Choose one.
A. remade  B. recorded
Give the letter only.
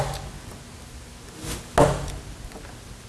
B